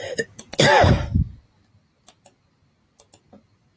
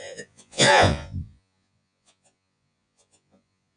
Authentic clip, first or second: first